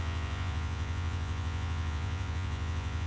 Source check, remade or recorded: remade